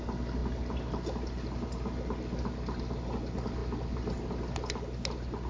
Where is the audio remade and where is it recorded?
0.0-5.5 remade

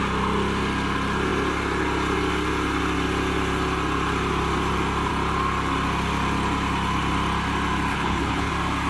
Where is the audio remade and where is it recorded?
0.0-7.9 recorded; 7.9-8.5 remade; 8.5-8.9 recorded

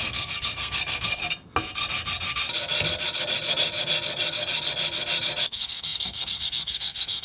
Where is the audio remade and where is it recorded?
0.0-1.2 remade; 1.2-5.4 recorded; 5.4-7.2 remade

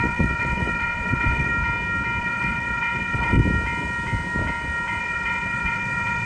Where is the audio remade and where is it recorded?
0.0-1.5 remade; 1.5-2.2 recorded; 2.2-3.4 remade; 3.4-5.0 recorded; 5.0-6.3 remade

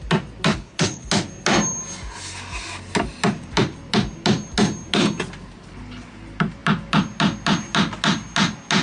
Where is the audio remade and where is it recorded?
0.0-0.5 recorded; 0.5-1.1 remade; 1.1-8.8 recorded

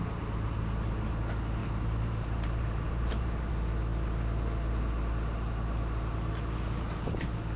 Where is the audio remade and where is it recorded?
0.0-1.6 recorded; 1.6-3.5 remade; 3.5-7.6 recorded